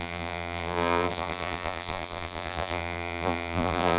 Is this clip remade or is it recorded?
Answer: remade